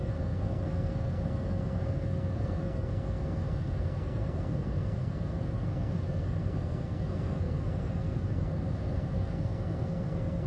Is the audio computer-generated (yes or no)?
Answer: yes